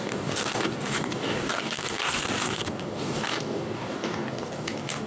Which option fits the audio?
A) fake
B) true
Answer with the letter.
A